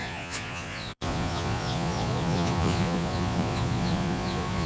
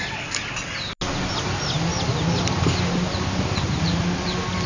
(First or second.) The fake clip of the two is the first